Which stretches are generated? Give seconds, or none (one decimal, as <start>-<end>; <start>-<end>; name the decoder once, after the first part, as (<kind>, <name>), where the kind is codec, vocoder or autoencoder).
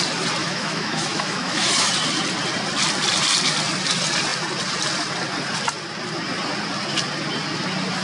0.4-1.9 (autoencoder, DAC-VAE)